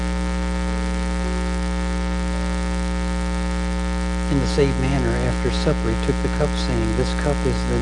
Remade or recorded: recorded